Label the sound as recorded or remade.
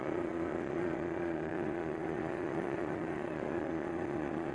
remade